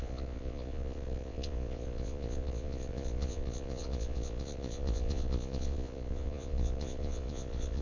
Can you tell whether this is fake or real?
fake